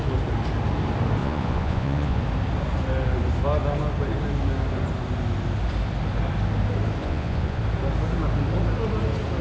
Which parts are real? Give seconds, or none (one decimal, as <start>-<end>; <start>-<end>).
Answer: 0.0-1.2; 2.2-7.0; 7.6-9.4